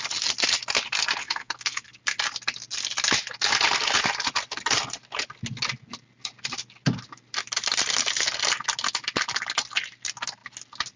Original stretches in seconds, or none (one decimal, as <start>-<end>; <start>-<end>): 0.0-1.2; 2.0-11.0

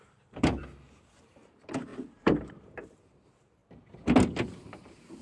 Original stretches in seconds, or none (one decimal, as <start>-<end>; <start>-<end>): 0.6-1.1; 3.6-4.5

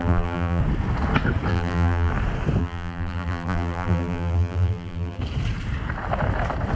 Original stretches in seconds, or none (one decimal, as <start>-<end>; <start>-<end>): 0.6-1.5; 2.1-2.6; 5.2-6.8

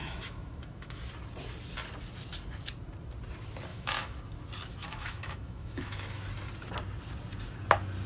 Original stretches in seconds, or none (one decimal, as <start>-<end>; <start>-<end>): 1.0-3.7; 4.2-4.8; 6.1-8.1

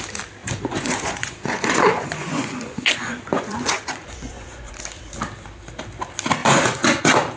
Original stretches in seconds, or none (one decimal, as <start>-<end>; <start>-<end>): 0.0-0.4; 4.8-6.4; 7.0-7.4

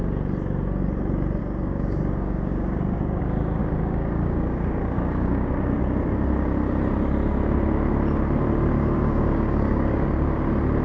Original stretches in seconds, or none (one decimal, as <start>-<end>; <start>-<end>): 0.0-1.4; 3.2-3.6; 5.8-8.8; 10.1-10.8